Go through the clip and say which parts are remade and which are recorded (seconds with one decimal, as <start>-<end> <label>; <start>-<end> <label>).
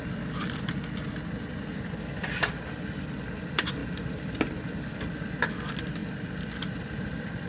0.0-7.5 recorded